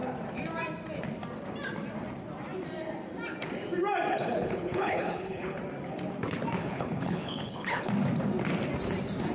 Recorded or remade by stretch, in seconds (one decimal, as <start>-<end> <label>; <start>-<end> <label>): 0.0-4.1 recorded; 4.1-5.6 remade; 5.6-6.6 recorded; 6.6-7.9 remade; 7.9-9.3 recorded